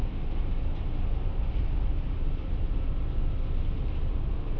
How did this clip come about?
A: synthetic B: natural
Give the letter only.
B